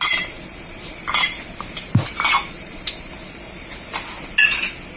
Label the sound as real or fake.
real